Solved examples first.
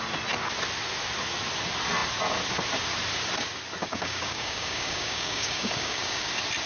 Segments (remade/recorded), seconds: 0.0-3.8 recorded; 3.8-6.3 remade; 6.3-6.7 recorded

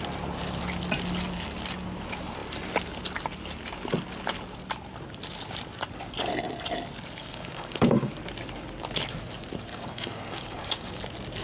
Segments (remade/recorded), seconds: 0.0-7.2 recorded; 7.2-8.1 remade; 8.1-9.7 recorded; 9.7-11.0 remade; 11.0-11.4 recorded

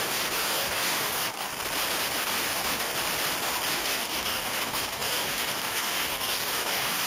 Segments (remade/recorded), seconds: 0.0-1.5 remade; 1.5-2.1 recorded; 2.1-2.9 remade; 2.9-3.7 recorded; 3.7-7.1 remade

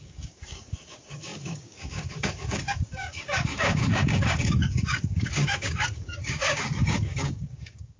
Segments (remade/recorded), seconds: 0.0-8.0 remade

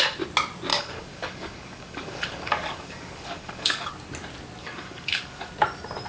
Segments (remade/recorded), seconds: 0.0-0.7 recorded; 0.7-3.9 remade; 3.9-4.6 recorded; 4.6-5.5 remade; 5.5-6.1 recorded

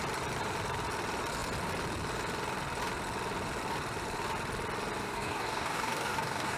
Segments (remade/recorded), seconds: 0.0-5.0 recorded; 5.0-6.6 remade

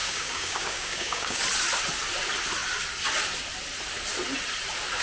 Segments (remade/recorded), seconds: 0.0-1.4 remade; 1.4-5.0 recorded

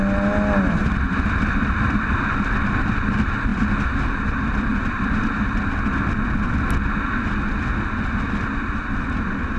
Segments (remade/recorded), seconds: 0.0-9.6 recorded